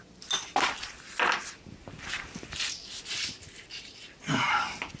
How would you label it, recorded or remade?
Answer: recorded